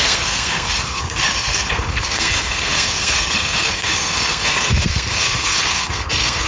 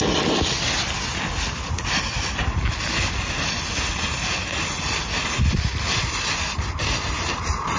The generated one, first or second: first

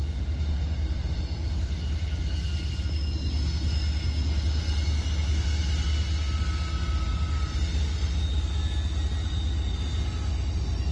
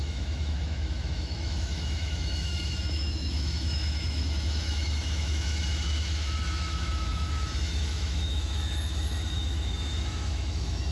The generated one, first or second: second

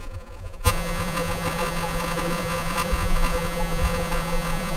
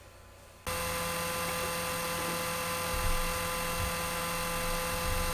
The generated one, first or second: first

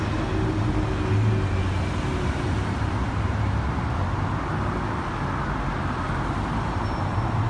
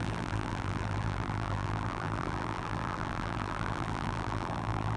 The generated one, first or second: second